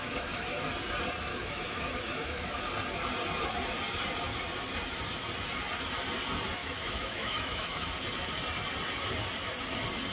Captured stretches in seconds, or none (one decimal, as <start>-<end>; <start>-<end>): 0.6-1.3; 2.6-6.6; 7.9-10.1